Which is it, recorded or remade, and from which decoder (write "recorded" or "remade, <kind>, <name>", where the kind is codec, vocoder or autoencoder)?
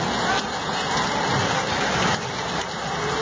recorded